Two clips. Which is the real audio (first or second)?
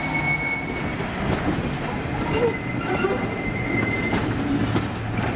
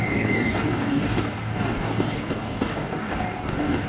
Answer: first